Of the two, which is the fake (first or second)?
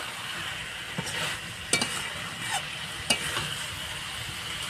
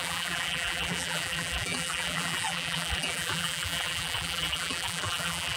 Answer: second